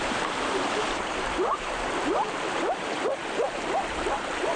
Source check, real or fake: fake